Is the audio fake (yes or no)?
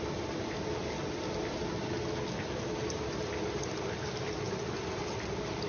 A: no